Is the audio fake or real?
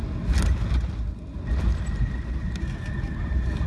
real